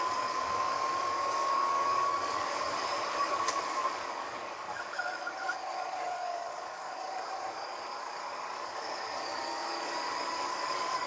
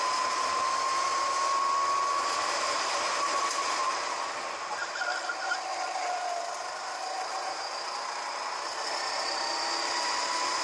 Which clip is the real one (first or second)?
second